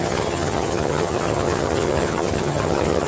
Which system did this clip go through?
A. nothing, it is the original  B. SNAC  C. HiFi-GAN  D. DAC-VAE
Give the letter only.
C